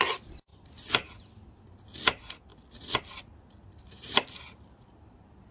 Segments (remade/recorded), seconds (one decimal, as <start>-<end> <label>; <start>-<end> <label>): 0.0-5.5 recorded